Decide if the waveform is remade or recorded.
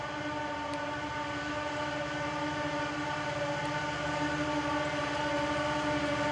recorded